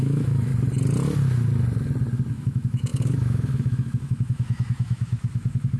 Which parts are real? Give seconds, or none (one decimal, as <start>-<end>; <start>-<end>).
0.5-2.3